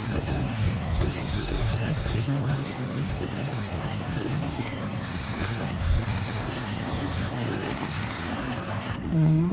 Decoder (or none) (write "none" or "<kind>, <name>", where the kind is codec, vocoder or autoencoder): codec, SNAC